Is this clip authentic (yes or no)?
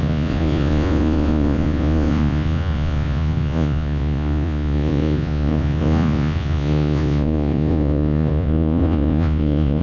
no